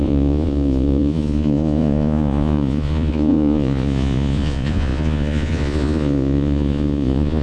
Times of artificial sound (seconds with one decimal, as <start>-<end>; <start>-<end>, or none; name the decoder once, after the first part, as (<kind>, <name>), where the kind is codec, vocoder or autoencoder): 0.0-7.4 (vocoder, Vocos)